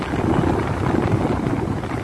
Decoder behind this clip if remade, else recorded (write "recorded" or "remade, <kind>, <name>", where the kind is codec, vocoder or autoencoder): recorded